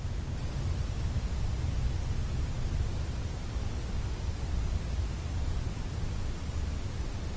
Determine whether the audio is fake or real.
real